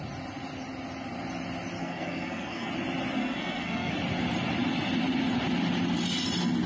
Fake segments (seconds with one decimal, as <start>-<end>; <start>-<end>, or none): 1.8-2.7; 3.2-3.9

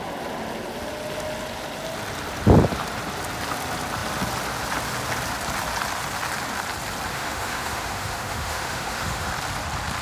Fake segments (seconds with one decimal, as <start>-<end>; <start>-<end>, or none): 7.1-9.3

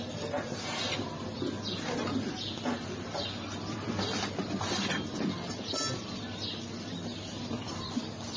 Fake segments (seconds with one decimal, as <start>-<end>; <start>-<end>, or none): none

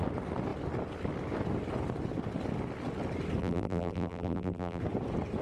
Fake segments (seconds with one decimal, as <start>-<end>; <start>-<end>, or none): 3.4-4.8

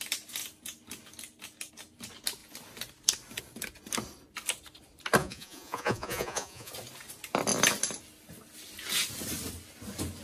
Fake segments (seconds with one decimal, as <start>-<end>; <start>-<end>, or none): 5.2-6.7